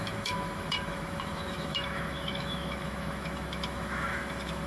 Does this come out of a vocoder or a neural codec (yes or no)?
yes